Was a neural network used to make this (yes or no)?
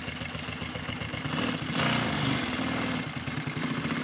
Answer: no